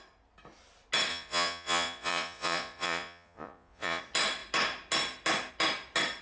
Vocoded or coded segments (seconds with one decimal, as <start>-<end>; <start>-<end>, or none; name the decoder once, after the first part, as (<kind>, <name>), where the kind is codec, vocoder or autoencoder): 1.1-4.0 (vocoder, Vocos)